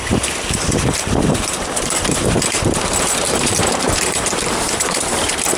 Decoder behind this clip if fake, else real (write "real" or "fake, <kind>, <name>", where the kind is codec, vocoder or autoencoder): fake, vocoder, BigVGAN v2